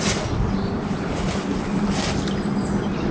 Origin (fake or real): real